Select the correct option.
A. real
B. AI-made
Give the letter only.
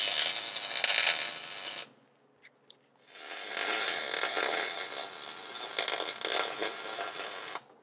A